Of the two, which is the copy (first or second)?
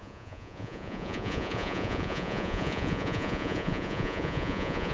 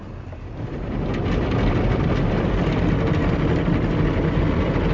first